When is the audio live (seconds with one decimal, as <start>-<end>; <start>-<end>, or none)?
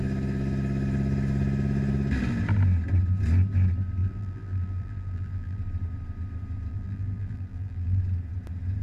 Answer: 0.0-4.0; 5.6-6.7; 8.0-8.8